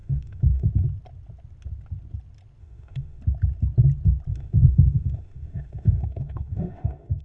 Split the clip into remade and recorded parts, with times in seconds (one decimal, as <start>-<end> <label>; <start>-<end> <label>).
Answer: 0.0-0.7 remade; 0.7-2.6 recorded; 2.6-3.2 remade; 3.2-4.3 recorded; 4.3-7.2 remade